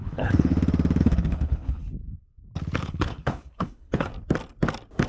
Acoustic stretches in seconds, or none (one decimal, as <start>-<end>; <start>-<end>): 0.5-1.0; 1.8-2.8; 4.1-5.1